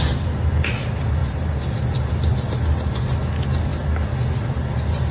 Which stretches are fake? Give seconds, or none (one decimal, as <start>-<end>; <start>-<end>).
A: none